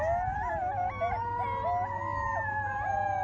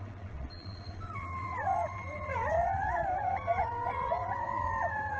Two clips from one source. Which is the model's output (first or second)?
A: second